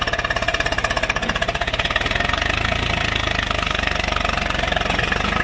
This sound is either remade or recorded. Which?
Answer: recorded